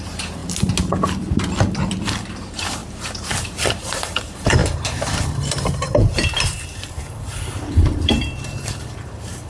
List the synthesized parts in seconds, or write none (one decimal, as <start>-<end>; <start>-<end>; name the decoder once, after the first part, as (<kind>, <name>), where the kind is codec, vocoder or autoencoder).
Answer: 0.0-0.4 (vocoder, BigVGAN v2); 2.4-9.5